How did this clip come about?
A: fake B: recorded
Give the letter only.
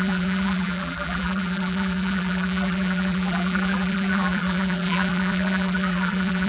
A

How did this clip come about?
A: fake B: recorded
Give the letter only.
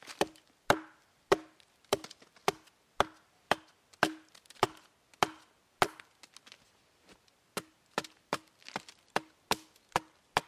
B